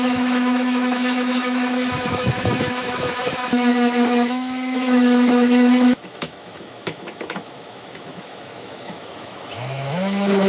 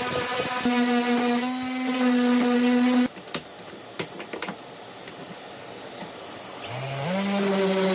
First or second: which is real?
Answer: second